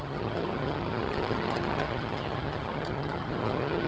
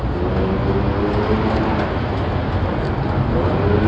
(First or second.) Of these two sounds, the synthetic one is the first